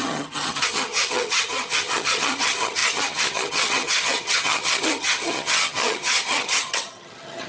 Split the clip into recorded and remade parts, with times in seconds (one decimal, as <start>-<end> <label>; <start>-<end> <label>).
0.0-7.5 remade

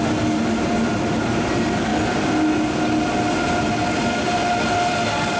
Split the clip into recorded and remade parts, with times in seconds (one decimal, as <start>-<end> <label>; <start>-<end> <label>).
0.0-5.4 recorded

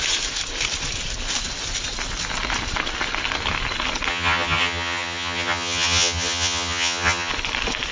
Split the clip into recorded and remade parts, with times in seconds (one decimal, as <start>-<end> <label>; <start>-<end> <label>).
0.0-4.1 recorded; 4.1-7.3 remade; 7.3-7.9 recorded

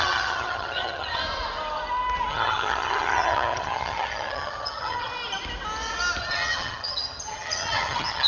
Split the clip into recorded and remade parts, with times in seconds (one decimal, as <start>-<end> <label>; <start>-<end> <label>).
0.0-1.2 remade; 1.2-2.3 recorded; 2.3-5.1 remade; 5.1-6.2 recorded; 6.2-8.3 remade

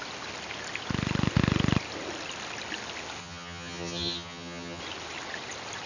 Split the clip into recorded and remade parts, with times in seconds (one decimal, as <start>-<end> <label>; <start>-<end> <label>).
0.0-3.2 recorded; 3.2-4.8 remade; 4.8-5.9 recorded

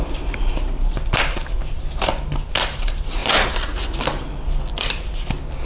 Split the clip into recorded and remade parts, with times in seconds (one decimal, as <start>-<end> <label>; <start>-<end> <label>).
0.0-5.7 recorded